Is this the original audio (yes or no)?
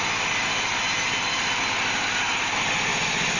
yes